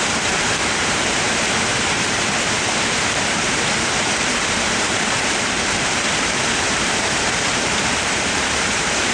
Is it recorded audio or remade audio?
remade